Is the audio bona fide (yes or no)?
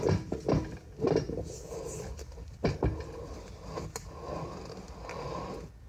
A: yes